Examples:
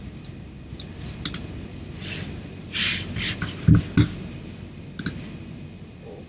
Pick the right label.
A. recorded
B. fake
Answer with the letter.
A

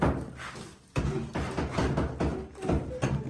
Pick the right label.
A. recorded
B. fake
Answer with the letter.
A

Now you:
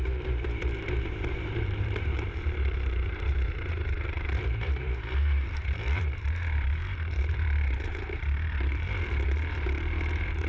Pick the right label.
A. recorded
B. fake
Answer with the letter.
B